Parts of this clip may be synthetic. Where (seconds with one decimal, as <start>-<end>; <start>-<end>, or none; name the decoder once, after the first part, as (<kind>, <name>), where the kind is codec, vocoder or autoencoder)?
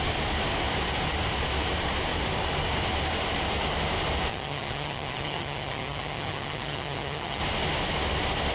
4.3-7.4 (vocoder, HiFi-GAN)